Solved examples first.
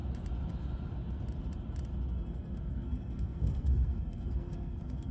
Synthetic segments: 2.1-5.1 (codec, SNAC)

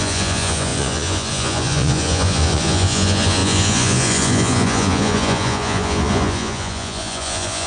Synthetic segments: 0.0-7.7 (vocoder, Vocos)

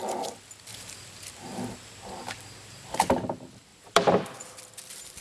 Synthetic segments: 0.7-3.1 (vocoder, BigVGAN v2); 3.7-4.7